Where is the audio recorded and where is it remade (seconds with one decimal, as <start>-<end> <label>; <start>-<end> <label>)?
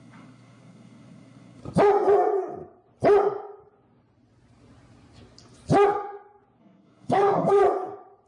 0.0-1.6 remade; 1.6-6.6 recorded; 6.6-7.6 remade; 7.6-8.3 recorded